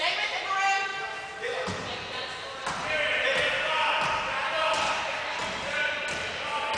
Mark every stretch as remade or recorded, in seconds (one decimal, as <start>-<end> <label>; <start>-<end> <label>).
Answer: 0.0-5.4 recorded; 5.4-6.0 remade; 6.0-6.8 recorded